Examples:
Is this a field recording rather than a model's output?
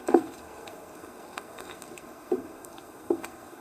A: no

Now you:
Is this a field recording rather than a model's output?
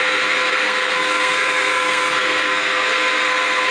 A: no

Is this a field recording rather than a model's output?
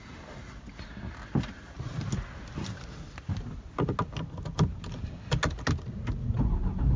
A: yes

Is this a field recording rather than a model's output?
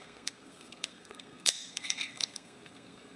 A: no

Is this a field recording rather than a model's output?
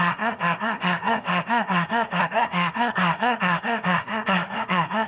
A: no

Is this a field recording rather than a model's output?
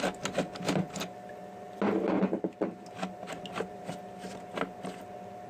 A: yes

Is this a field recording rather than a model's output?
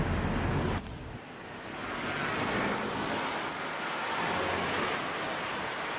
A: yes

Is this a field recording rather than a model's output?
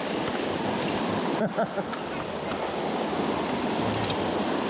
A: yes